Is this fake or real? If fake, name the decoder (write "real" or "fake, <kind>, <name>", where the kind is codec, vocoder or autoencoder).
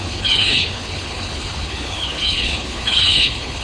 fake, codec, HILCodec